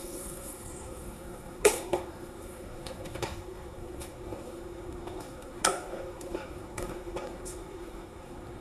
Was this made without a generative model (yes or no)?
no